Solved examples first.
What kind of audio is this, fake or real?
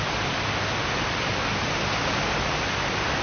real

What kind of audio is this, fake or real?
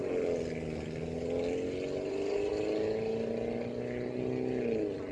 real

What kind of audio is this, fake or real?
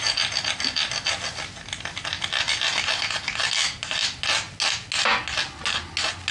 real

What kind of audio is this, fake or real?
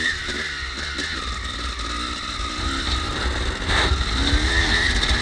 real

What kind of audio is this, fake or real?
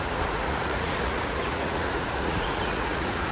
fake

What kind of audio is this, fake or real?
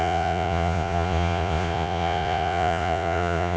fake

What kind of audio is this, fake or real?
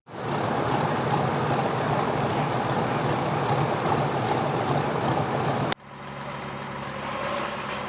real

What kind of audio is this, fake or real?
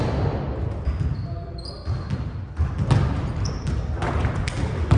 real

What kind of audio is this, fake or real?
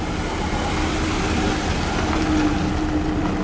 real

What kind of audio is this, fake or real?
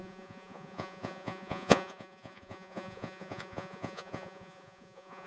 fake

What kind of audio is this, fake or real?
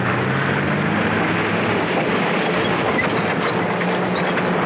real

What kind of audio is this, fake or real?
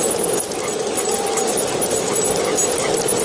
real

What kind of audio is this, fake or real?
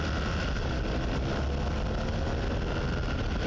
real